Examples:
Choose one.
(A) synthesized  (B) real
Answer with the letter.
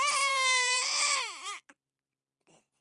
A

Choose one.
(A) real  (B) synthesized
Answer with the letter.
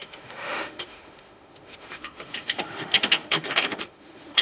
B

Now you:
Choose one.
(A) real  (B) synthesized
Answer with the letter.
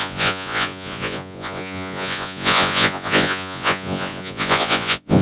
B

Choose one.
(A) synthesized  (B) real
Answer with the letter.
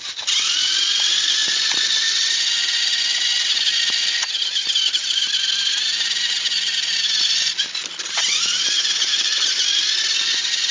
B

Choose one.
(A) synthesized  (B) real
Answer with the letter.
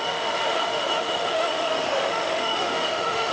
A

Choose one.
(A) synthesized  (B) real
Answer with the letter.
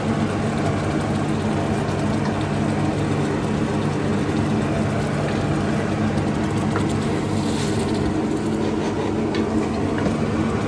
B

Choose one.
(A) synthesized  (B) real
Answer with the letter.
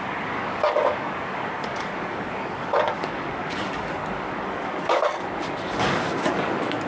A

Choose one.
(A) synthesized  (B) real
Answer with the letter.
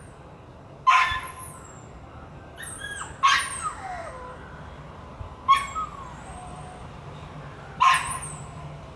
B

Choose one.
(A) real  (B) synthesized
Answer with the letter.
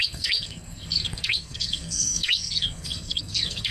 B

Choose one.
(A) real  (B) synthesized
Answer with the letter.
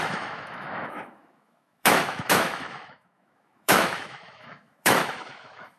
B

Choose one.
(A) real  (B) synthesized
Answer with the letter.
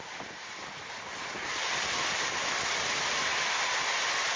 B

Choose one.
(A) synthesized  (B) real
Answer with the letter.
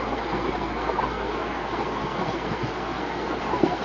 A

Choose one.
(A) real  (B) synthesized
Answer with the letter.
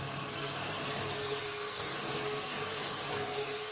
B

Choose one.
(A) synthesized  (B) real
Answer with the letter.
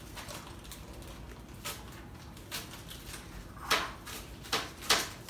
B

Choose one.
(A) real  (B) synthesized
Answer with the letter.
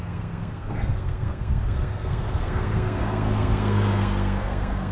B